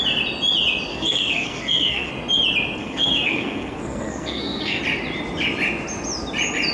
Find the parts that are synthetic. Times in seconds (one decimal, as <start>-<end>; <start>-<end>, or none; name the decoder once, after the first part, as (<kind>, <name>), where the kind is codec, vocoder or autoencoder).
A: 0.9-2.1 (codec, SNAC); 2.8-4.8

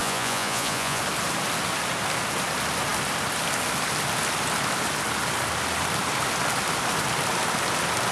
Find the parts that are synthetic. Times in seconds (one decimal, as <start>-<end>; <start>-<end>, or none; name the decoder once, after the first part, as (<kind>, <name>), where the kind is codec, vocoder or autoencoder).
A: 0.0-1.0 (vocoder, Vocos)

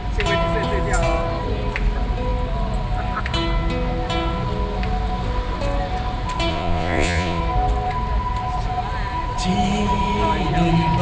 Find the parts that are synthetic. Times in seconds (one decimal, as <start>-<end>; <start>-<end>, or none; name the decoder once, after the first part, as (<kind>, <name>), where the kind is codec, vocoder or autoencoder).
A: 6.5-7.4 (vocoder, Vocos)

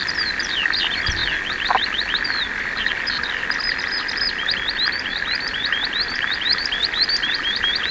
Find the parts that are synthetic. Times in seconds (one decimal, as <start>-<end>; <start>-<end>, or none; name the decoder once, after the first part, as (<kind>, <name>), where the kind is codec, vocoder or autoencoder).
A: 0.0-1.2 (vocoder, BigVGAN v2); 3.4-7.9

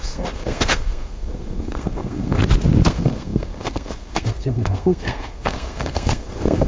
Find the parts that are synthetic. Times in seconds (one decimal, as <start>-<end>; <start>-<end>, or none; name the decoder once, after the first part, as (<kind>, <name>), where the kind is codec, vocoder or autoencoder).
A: 0.0-2.4 (codec, SNAC); 2.9-6.7

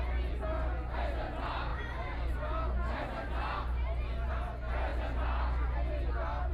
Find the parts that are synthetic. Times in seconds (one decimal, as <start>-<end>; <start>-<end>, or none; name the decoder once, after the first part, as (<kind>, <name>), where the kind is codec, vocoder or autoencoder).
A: none

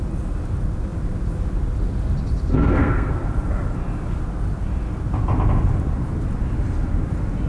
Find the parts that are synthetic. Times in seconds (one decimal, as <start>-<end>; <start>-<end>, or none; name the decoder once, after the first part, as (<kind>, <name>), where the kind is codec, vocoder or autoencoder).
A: 2.5-3.1 (codec, SNAC)

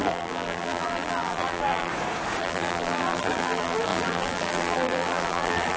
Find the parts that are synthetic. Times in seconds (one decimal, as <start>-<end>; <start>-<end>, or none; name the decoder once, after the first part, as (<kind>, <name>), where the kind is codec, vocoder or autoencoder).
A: 0.0-1.9 (vocoder, BigVGAN v2); 2.4-5.8